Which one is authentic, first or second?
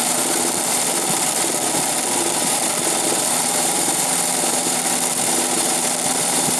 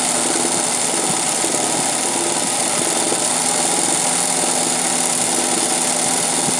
second